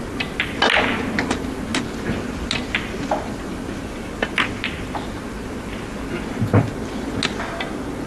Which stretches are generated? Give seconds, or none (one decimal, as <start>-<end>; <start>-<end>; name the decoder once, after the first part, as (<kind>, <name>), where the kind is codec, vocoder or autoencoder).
none